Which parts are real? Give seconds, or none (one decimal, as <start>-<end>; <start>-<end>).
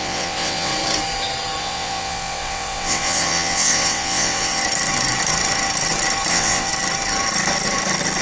0.7-1.6; 4.6-6.3; 6.7-8.2